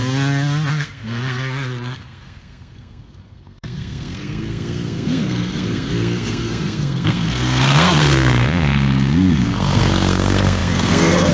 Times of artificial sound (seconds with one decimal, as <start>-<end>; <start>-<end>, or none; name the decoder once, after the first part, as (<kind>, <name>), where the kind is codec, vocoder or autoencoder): 0.7-11.3 (codec, SNAC)